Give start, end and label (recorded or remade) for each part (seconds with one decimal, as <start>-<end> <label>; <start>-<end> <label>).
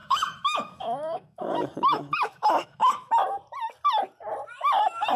0.0-3.1 remade; 3.1-5.2 recorded